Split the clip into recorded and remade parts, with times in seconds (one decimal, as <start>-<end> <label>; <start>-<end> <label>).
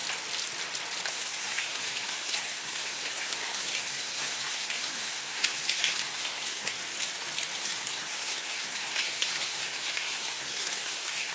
0.0-1.1 recorded; 1.1-6.8 remade; 6.8-7.6 recorded; 7.6-11.3 remade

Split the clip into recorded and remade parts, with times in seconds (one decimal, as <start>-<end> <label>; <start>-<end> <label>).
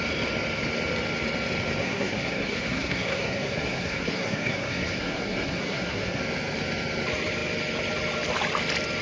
0.0-1.8 recorded; 1.8-6.2 remade; 6.2-9.0 recorded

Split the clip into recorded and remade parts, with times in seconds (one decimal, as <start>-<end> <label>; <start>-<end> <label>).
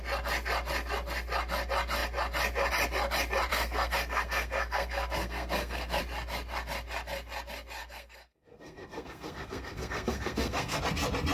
0.0-3.5 recorded; 3.5-6.0 remade; 6.0-7.8 recorded; 7.8-10.8 remade; 10.8-11.3 recorded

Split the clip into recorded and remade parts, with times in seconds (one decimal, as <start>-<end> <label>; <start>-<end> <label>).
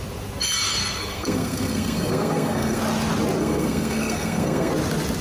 0.0-0.8 recorded; 0.8-2.8 remade; 2.8-3.4 recorded; 3.4-4.7 remade; 4.7-5.2 recorded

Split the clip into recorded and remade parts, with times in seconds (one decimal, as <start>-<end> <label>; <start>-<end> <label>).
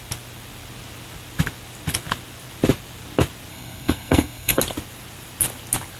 0.0-3.5 recorded; 3.5-4.6 remade; 4.6-6.0 recorded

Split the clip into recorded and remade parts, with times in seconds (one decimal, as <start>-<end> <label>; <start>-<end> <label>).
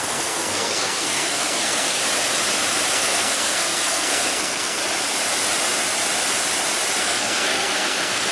0.0-2.0 remade; 2.0-2.9 recorded; 2.9-4.8 remade; 4.8-7.0 recorded; 7.0-8.3 remade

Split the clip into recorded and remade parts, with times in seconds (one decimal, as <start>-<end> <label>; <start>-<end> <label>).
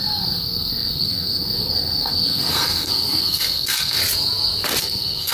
0.0-4.0 remade; 4.0-4.8 recorded; 4.8-5.3 remade